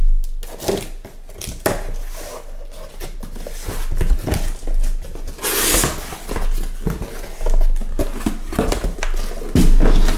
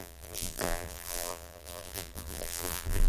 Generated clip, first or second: second